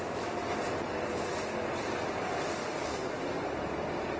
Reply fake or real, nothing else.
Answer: real